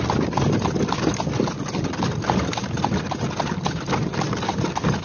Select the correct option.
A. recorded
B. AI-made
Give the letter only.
A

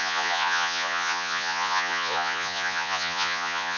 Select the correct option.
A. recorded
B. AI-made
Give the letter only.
B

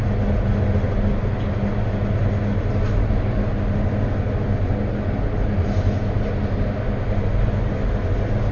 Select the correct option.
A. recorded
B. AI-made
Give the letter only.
A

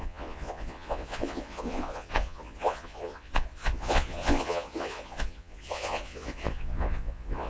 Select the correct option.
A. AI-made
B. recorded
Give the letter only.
A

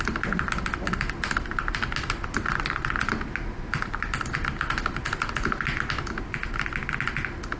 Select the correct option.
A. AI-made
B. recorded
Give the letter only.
B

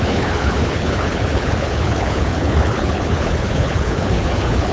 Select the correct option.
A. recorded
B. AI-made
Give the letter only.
B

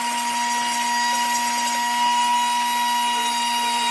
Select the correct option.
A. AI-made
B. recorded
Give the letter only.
B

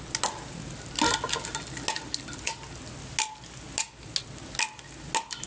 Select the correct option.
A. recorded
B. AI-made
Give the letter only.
A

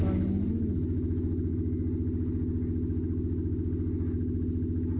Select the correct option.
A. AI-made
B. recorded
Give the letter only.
B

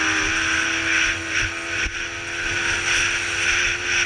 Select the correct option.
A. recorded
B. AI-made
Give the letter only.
A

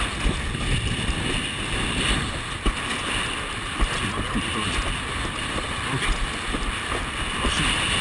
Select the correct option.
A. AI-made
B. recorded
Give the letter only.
B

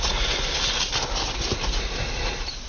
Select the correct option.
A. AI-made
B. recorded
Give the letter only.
B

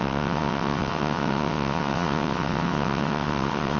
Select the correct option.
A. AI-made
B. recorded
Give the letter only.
A